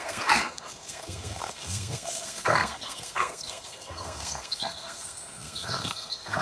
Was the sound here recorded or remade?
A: remade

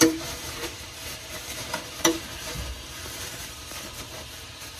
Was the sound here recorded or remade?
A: remade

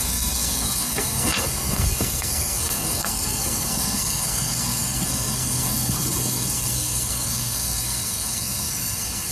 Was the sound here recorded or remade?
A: remade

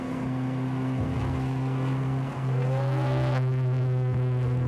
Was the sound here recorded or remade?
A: remade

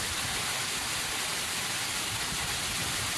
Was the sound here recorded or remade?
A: recorded